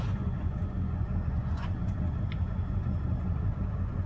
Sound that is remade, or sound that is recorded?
remade